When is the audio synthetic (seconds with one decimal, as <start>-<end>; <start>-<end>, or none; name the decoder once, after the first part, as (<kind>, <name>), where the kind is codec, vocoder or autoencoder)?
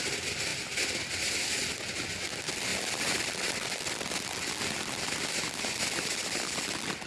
none